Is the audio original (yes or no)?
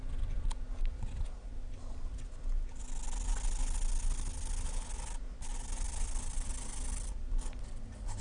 yes